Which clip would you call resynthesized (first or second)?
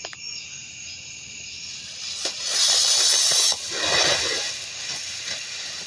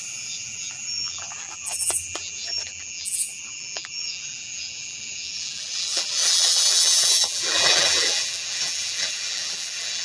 second